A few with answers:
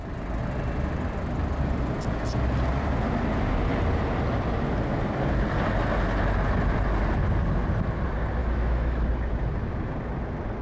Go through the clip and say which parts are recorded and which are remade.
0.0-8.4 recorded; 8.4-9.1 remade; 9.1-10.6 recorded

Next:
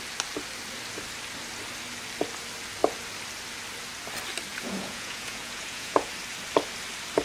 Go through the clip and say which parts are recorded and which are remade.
0.0-4.5 recorded; 4.5-6.1 remade; 6.1-7.2 recorded

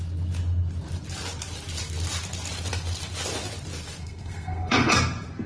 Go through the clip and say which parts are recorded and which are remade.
0.0-4.0 recorded; 4.0-4.9 remade; 4.9-5.5 recorded

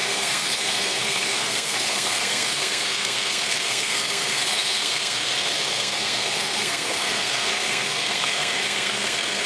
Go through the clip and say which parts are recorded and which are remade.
0.0-9.5 remade

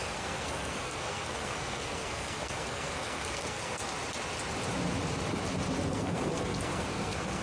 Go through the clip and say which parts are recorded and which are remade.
0.0-3.8 remade; 3.8-5.9 recorded; 5.9-7.4 remade

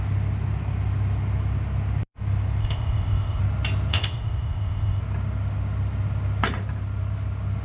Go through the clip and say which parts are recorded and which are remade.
0.0-2.6 recorded; 2.6-3.4 remade; 3.4-3.9 recorded; 3.9-5.0 remade; 5.0-7.6 recorded

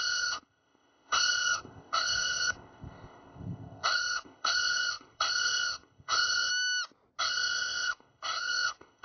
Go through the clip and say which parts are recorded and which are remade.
0.0-6.5 remade; 6.5-7.2 recorded; 7.2-9.0 remade

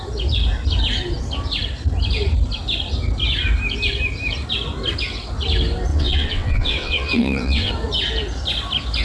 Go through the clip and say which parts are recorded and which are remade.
0.0-5.9 recorded; 5.9-7.7 remade; 7.7-9.0 recorded